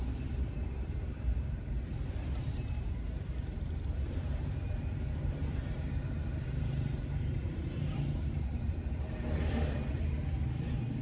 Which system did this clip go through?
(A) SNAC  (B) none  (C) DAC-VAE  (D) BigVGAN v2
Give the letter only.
D